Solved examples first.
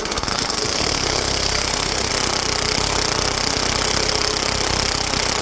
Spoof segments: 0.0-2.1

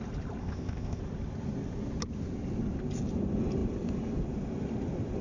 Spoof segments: 0.4-1.0

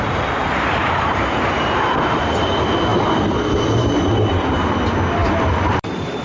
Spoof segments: 0.4-1.2; 2.9-4.7; 5.2-6.2

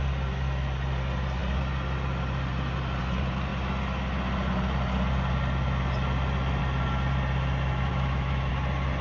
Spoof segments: 7.9-8.5

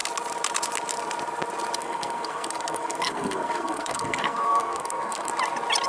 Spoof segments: 1.8-5.3

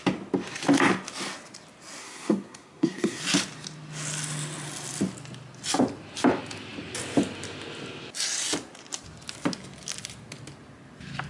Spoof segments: 2.0-3.2

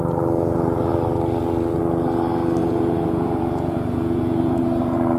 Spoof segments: 2.6-4.6